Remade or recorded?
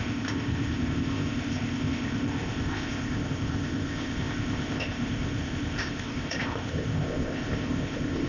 remade